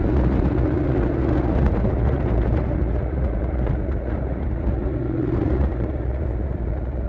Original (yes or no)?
no